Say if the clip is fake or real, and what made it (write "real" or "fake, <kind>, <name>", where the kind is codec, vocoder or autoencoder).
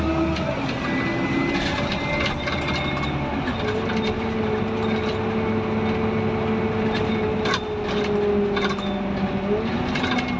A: real